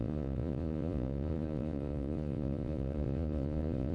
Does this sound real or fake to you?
fake